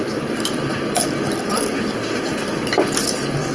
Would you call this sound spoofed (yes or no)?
yes